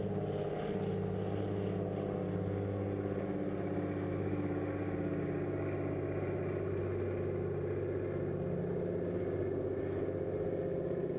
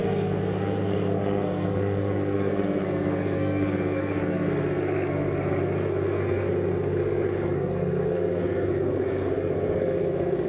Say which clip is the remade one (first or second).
second